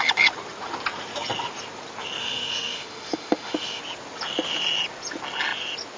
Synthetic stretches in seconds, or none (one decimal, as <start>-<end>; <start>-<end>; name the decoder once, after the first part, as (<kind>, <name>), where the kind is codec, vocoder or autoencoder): 2.2-3.8 (autoencoder, DAC-VAE)